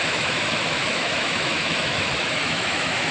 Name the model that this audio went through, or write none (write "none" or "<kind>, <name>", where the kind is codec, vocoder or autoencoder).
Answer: autoencoder, DAC-VAE